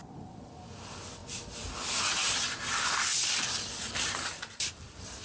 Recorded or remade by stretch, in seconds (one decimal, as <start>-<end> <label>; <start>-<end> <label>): 0.0-5.2 recorded